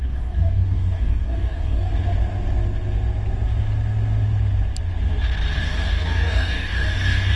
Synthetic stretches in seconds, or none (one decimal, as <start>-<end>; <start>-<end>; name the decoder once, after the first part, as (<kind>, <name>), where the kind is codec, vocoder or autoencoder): 0.0-1.9 (codec, DAC); 5.6-7.4